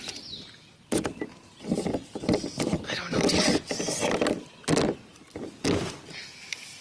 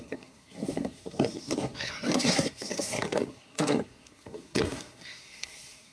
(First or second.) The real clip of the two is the first